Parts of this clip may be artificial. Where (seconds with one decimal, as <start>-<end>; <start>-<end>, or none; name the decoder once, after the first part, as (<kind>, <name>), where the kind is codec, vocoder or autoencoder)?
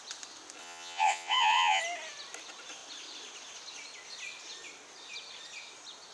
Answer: 0.6-1.8 (vocoder, WaveNeXt)